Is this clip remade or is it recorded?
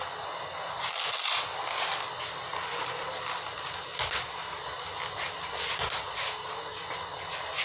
recorded